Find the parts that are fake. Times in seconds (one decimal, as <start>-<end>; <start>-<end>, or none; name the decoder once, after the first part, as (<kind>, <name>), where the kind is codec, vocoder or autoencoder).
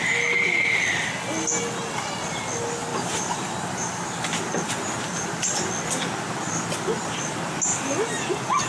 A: 2.9-5.7 (vocoder, BigVGAN v2)